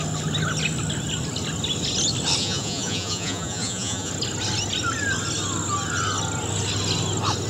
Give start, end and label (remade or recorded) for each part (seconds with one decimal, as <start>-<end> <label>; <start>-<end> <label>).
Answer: 0.0-2.4 recorded; 2.4-4.1 remade; 4.1-7.5 recorded